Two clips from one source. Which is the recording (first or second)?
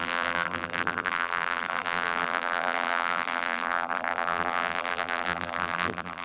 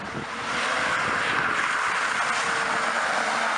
second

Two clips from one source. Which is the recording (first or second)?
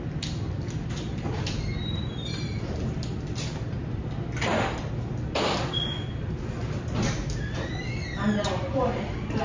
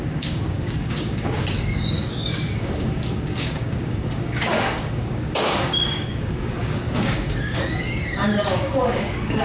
first